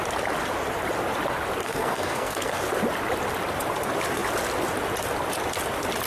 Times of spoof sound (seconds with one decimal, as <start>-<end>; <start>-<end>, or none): 1.6-2.6